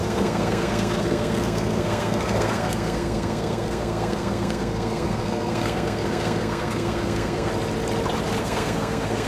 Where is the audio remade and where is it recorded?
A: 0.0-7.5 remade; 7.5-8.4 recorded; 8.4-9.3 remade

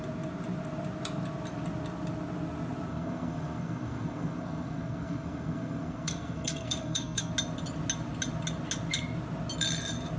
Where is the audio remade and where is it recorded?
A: 0.0-2.9 recorded; 2.9-7.3 remade; 7.3-10.2 recorded

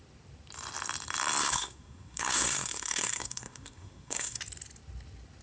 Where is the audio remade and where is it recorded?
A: 0.0-1.4 recorded; 1.4-4.4 remade; 4.4-5.4 recorded

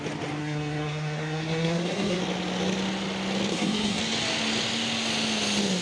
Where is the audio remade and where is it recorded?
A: 0.0-0.4 recorded; 0.4-2.2 remade; 2.2-3.5 recorded; 3.5-4.0 remade; 4.0-5.8 recorded

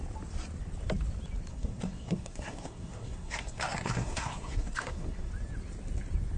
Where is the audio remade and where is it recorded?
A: 0.0-1.5 recorded; 1.5-5.3 remade; 5.3-6.4 recorded

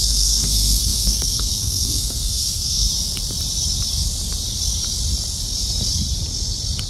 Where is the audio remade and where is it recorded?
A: 0.0-2.9 remade; 2.9-6.9 recorded

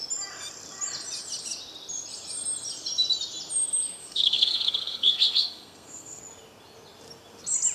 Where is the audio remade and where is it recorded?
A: 0.0-4.0 recorded; 4.0-6.2 remade; 6.2-7.7 recorded